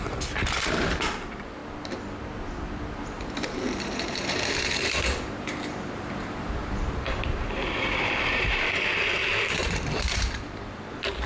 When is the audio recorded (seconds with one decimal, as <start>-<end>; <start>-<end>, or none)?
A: 1.6-3.0